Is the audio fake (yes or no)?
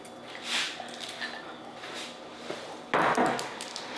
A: no